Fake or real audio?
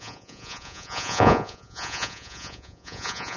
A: fake